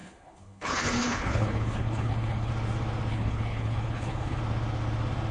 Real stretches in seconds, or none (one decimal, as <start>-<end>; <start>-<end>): 2.5-3.1; 4.4-5.3